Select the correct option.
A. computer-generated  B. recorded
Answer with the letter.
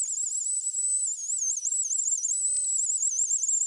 B